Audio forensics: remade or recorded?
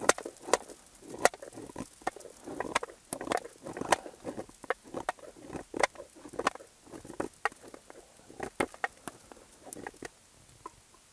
recorded